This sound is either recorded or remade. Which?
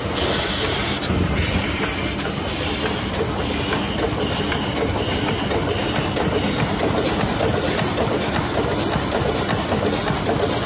recorded